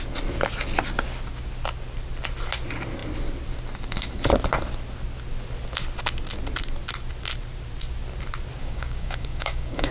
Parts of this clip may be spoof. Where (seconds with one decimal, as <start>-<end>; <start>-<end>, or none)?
8.6-9.9